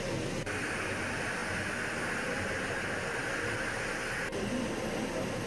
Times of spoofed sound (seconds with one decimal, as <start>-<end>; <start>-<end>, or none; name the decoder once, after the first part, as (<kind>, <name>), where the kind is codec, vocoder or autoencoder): none